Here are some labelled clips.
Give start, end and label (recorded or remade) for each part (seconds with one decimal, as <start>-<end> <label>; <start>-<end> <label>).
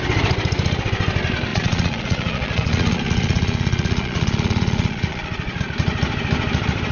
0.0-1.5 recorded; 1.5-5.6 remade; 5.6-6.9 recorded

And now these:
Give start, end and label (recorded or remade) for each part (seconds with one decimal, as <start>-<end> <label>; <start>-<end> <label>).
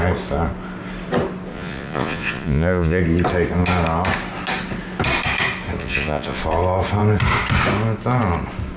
0.0-1.5 recorded; 1.5-3.0 remade; 3.0-5.8 recorded; 5.8-6.4 remade; 6.4-8.8 recorded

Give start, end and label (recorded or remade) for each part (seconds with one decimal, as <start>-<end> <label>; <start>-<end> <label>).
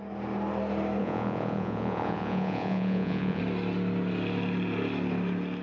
0.0-1.0 recorded; 1.0-3.4 remade; 3.4-5.6 recorded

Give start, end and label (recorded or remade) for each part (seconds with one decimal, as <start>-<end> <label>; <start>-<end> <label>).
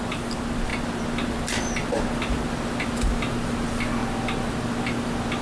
0.0-5.4 recorded